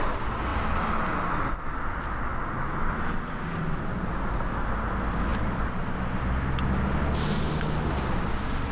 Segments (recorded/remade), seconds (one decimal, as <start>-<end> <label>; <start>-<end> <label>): 0.0-8.7 recorded